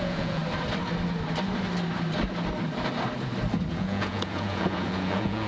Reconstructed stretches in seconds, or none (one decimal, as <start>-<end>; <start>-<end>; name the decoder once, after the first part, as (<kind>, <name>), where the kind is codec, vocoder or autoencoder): 0.0-0.4 (vocoder, Vocos); 3.7-5.5